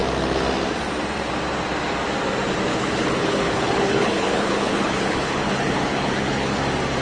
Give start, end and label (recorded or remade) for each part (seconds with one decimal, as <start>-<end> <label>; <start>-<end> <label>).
0.0-2.7 recorded; 2.7-6.6 remade; 6.6-7.0 recorded